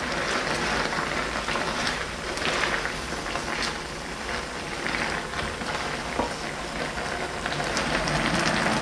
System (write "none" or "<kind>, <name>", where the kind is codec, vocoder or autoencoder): none